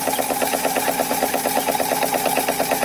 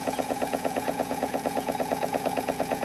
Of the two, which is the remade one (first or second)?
second